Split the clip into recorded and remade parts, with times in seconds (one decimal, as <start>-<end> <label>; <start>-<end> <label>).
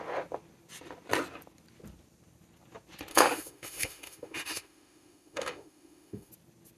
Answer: 0.0-3.1 recorded; 3.1-6.3 remade; 6.3-6.8 recorded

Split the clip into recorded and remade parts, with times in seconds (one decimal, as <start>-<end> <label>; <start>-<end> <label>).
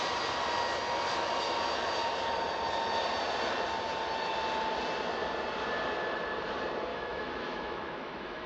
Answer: 0.0-6.9 recorded; 6.9-8.5 remade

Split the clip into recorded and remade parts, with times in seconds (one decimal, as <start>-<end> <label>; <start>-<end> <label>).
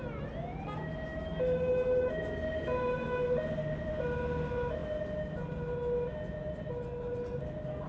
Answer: 0.0-1.1 recorded; 1.1-2.1 remade; 2.1-7.9 recorded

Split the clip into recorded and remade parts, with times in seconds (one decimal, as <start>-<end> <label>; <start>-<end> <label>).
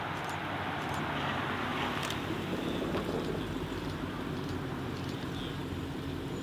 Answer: 0.0-6.4 recorded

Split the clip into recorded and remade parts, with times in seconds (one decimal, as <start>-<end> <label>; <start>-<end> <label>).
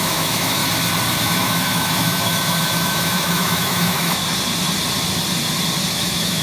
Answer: 0.0-0.6 remade; 0.6-1.2 recorded; 1.2-4.2 remade; 4.2-5.9 recorded; 5.9-6.4 remade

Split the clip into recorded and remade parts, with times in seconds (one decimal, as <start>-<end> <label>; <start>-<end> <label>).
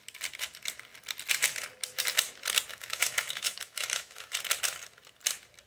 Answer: 0.0-2.7 recorded; 2.7-4.3 remade; 4.3-5.7 recorded